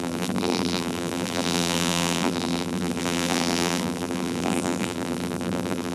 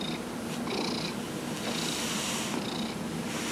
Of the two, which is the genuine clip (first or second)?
second